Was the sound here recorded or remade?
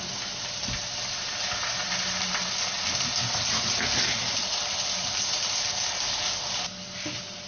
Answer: recorded